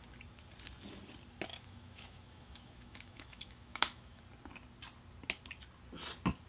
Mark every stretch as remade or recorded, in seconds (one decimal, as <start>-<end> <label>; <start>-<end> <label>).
0.0-1.5 recorded; 1.5-4.2 remade; 4.2-6.5 recorded